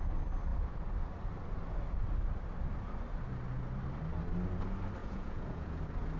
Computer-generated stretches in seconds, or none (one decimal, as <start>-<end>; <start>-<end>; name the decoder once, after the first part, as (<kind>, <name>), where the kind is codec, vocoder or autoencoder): 5.0-5.8 (vocoder, Vocos)